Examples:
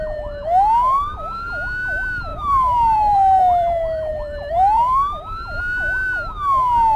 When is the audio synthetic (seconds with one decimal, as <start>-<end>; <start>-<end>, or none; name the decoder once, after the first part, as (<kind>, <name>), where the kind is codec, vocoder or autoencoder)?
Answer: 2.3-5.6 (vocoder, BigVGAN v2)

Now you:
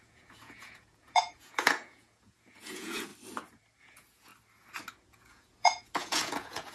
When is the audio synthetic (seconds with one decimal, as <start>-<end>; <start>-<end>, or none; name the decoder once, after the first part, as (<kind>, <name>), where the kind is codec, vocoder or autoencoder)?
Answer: 0.0-3.1 (vocoder, Vocos); 3.8-4.3; 4.9-6.7

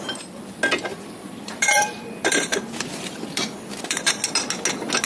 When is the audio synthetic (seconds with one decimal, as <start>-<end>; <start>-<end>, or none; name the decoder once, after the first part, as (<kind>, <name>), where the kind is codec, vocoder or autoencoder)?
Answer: 0.9-4.0 (vocoder, BigVGAN v2)

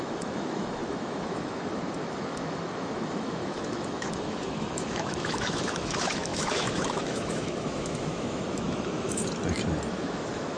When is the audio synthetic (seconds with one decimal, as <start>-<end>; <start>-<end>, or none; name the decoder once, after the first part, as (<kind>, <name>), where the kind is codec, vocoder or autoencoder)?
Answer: 0.0-9.2 (autoencoder, DAC-VAE); 9.9-10.6

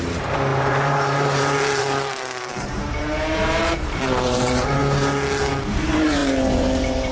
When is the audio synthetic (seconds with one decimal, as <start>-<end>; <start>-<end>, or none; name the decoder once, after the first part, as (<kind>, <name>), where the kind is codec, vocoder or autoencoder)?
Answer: 0.0-4.8 (vocoder, BigVGAN v2); 5.5-7.1

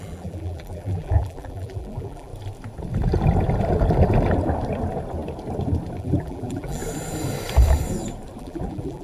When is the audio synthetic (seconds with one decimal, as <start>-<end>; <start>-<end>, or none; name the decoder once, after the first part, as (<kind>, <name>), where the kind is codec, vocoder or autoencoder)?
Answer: 0.0-2.3 (vocoder, BigVGAN v2); 6.0-6.8; 8.4-9.0

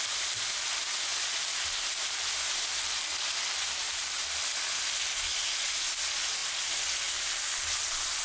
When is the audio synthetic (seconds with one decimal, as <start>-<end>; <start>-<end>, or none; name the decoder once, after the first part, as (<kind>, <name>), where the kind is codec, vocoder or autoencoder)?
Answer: none

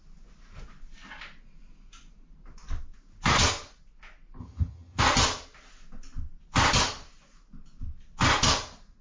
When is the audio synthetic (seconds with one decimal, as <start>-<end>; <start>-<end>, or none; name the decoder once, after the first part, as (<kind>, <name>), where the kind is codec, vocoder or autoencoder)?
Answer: 4.4-5.0 (vocoder, HiFi-GAN)